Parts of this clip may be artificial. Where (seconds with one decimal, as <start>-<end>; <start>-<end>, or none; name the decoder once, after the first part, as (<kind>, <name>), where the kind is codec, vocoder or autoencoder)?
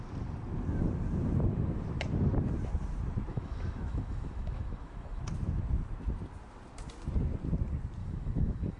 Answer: 3.3-5.2 (autoencoder, DAC-VAE); 8.0-8.8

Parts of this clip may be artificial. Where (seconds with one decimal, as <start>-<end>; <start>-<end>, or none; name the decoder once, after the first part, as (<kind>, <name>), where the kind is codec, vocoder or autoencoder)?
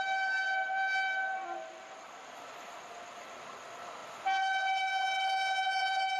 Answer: none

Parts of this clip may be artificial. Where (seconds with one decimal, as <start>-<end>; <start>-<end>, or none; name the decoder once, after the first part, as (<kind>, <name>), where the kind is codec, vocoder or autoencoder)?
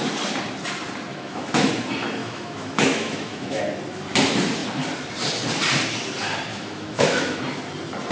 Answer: 1.1-1.7 (autoencoder, DAC-VAE); 2.2-3.6; 6.5-7.4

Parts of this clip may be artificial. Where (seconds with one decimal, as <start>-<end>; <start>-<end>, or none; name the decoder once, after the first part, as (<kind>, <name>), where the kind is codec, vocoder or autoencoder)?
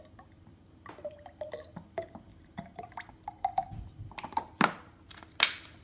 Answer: 2.3-3.1 (vocoder, BigVGAN v2)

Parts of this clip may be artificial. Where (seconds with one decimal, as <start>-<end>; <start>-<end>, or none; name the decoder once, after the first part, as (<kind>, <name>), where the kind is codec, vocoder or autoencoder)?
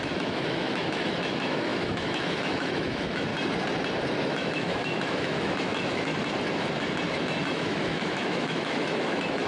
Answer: 0.0-3.3 (autoencoder, DAC-VAE); 4.3-6.1; 7.5-9.5